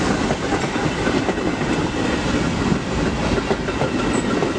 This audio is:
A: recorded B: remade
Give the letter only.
A